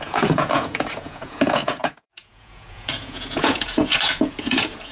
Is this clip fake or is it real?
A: fake